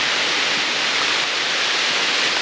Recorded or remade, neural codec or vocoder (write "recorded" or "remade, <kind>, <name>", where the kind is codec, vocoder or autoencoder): recorded